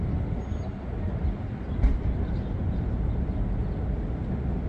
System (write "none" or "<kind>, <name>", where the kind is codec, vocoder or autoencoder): none